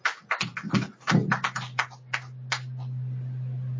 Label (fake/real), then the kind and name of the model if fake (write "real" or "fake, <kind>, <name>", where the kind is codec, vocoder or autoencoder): real